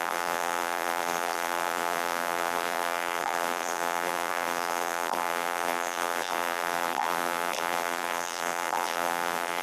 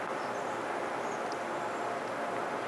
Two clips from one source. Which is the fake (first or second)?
first